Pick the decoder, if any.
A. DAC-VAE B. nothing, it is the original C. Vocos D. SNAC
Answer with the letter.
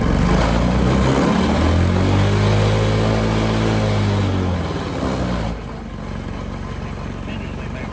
B